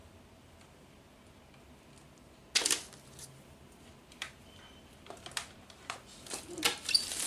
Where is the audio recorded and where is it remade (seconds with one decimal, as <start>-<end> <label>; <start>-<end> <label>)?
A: 0.0-7.3 recorded